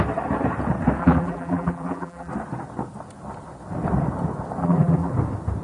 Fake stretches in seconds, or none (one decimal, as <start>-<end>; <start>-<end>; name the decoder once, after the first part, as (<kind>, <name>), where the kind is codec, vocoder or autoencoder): 1.0-2.3 (vocoder, BigVGAN v2); 4.6-5.1